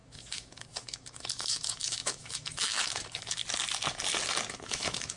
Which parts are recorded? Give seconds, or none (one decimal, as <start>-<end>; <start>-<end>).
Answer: 3.4-4.5